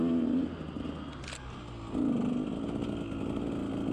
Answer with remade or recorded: recorded